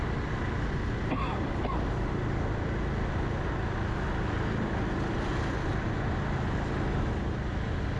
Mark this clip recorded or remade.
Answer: recorded